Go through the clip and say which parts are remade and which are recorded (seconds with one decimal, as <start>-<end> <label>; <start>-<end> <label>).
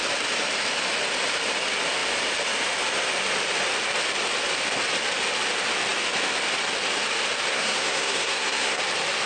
0.0-7.5 recorded; 7.5-8.8 remade; 8.8-9.3 recorded